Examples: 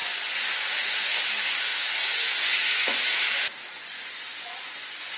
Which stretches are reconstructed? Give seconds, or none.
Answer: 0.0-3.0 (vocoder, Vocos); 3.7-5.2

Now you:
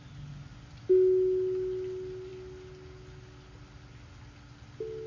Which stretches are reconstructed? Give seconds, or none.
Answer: none

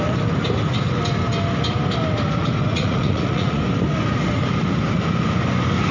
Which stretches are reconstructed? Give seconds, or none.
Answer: 2.7-3.6 (vocoder, Vocos)

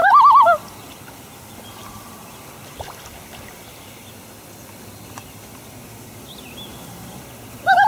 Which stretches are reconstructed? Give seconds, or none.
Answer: 0.0-0.9 (vocoder, BigVGAN v2); 6.7-7.9

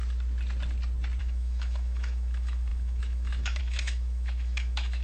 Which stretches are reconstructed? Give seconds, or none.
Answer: 1.2-5.0 (autoencoder, DAC-VAE)